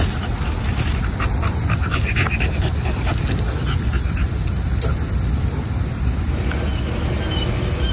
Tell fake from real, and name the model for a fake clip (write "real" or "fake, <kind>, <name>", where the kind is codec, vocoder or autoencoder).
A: real